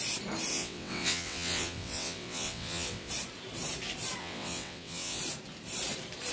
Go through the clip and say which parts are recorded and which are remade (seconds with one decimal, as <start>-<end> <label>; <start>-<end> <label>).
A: 0.0-0.5 recorded; 0.5-3.1 remade; 3.1-4.2 recorded; 4.2-5.2 remade; 5.2-6.3 recorded